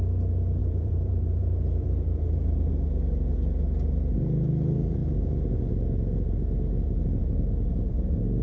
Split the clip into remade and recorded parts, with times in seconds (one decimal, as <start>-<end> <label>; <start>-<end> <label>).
0.0-0.6 recorded; 0.6-2.7 remade; 2.7-8.4 recorded